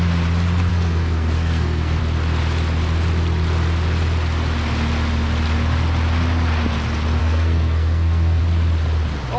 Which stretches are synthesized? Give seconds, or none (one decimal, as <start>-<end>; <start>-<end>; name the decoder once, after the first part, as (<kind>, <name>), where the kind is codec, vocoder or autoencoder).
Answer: 0.7-2.0 (codec, SNAC); 7.2-8.4